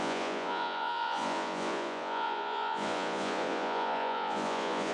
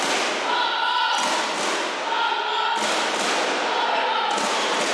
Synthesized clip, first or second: first